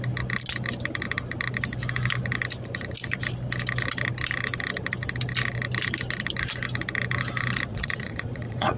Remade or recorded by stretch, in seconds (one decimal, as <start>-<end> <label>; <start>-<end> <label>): 0.0-7.7 recorded; 7.7-8.8 remade